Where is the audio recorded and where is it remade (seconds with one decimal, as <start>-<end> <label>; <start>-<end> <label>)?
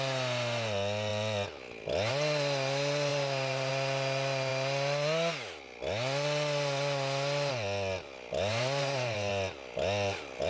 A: 0.0-3.1 recorded; 3.1-3.7 remade; 3.7-8.5 recorded; 8.5-9.3 remade; 9.3-10.5 recorded